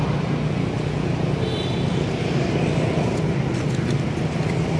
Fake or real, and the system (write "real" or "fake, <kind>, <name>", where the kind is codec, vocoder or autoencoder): real